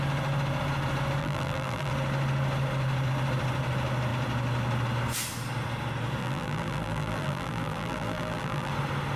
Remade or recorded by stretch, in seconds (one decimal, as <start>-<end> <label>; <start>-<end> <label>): 0.0-1.2 recorded; 1.2-1.9 remade; 1.9-6.2 recorded; 6.2-8.7 remade; 8.7-9.2 recorded

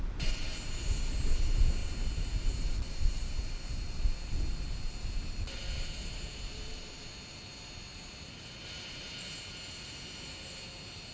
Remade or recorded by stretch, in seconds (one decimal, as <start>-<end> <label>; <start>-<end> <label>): 0.0-1.8 recorded; 1.8-7.0 remade; 7.0-7.9 recorded; 7.9-11.1 remade

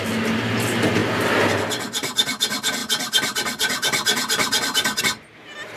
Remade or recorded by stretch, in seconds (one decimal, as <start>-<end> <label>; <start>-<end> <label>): 0.0-2.8 recorded; 2.8-5.0 remade; 5.0-5.8 recorded

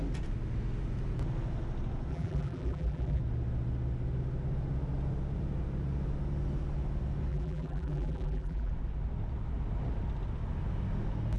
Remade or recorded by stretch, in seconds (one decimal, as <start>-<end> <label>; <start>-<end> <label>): 0.0-2.1 recorded; 2.1-3.2 remade; 3.2-7.3 recorded; 7.3-8.7 remade; 8.7-11.4 recorded

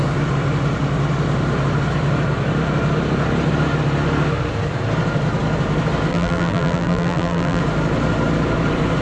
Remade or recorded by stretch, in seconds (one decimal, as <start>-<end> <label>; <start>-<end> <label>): 0.0-6.1 recorded; 6.1-7.6 remade; 7.6-9.0 recorded